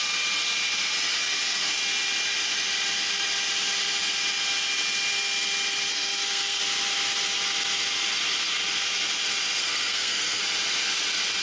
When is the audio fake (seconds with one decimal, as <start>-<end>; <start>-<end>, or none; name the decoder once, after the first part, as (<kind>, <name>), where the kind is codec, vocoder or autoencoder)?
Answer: 5.9-6.6 (codec, SNAC); 9.6-10.4